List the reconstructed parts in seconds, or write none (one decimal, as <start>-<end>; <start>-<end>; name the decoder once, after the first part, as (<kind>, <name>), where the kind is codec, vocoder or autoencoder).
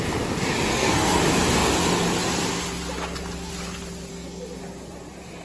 0.7-1.2 (codec, SNAC); 4.1-4.6